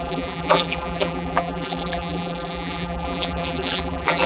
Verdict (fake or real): fake